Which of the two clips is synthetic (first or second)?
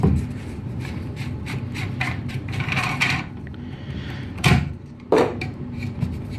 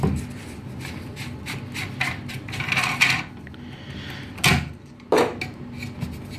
first